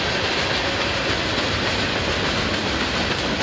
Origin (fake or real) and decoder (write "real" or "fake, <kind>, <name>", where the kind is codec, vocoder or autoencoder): real